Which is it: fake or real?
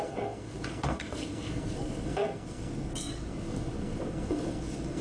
fake